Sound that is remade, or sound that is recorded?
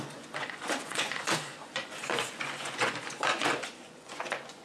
remade